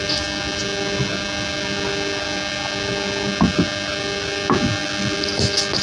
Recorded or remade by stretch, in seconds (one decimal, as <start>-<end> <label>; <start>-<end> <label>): 0.0-5.8 recorded